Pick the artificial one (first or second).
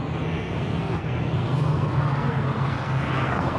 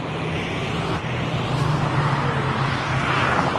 first